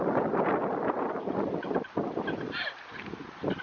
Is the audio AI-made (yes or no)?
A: yes